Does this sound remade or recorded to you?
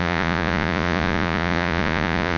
remade